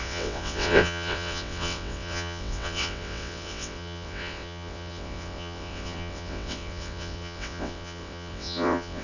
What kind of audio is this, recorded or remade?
remade